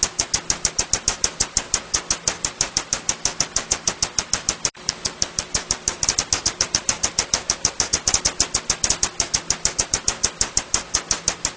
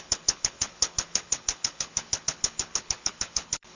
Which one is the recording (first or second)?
first